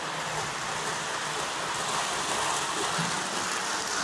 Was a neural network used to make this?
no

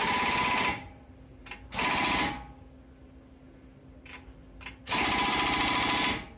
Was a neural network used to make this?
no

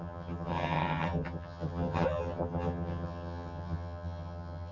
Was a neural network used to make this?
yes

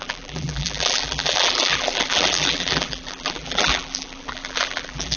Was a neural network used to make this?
yes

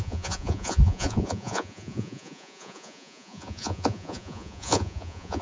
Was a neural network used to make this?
yes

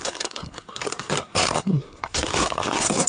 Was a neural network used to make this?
yes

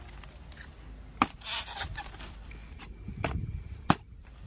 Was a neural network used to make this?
no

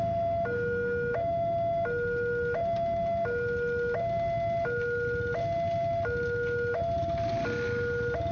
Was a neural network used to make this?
no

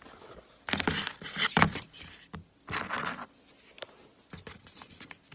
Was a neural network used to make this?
no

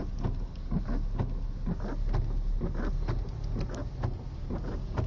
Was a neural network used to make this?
no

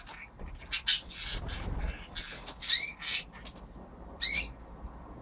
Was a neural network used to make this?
no